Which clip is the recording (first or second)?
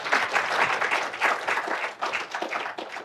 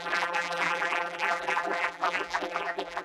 first